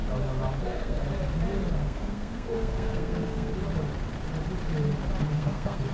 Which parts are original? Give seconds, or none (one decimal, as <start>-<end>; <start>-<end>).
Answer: 0.0-0.6; 1.0-1.7; 3.5-5.3